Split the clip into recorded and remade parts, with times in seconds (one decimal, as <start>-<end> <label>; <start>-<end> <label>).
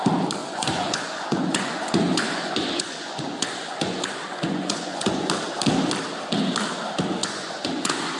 0.0-0.4 recorded; 0.4-5.3 remade; 5.3-7.2 recorded; 7.2-8.2 remade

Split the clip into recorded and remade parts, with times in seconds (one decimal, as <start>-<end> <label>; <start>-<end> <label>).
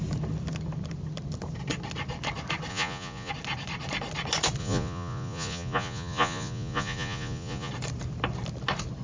0.0-2.7 recorded; 2.7-3.3 remade; 3.3-4.6 recorded; 4.6-7.7 remade; 7.7-9.0 recorded